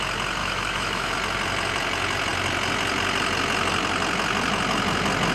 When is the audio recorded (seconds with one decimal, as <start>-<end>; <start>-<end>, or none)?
0.0-0.4; 1.1-5.3